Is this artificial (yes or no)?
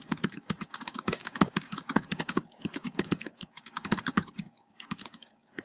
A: yes